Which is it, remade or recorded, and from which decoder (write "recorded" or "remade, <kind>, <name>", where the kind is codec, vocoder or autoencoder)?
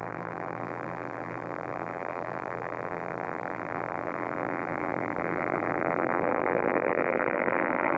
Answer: remade, vocoder, BigVGAN v2